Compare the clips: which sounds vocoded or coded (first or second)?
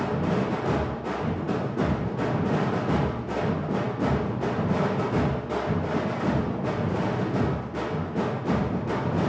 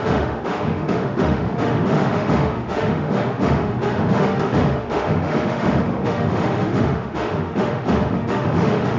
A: second